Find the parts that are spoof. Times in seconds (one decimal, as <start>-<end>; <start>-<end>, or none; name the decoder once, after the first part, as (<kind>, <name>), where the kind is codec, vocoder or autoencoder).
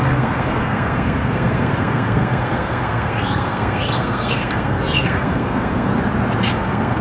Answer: 0.0-5.9 (codec, SNAC); 6.5-7.0